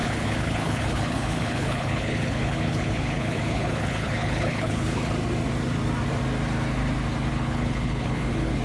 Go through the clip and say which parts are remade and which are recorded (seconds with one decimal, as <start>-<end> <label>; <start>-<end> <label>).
0.0-5.1 remade; 5.1-7.3 recorded; 7.3-8.6 remade